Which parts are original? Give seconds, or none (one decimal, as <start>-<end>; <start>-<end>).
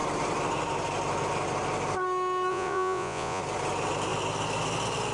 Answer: 0.0-2.5; 3.4-5.1